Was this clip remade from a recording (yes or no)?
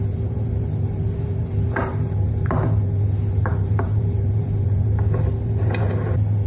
yes